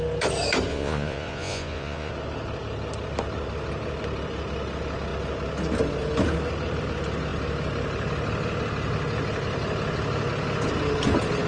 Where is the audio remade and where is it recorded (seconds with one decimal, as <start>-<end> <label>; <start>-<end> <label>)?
0.0-0.7 recorded; 0.7-2.1 remade; 2.1-11.5 recorded